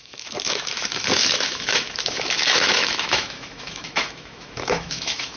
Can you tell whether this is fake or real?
fake